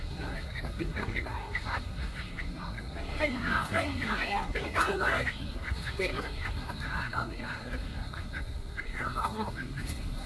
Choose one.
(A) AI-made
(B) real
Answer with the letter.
A